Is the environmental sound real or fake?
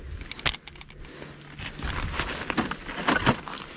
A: real